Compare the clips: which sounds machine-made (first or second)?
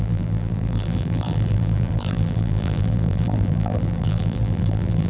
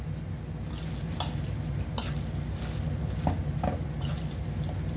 first